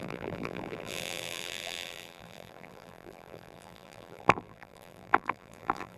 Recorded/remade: remade